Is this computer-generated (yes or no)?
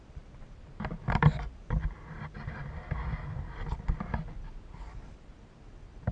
no